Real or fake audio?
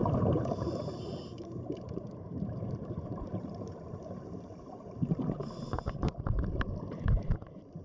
fake